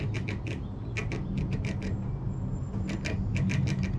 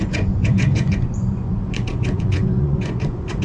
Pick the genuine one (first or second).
first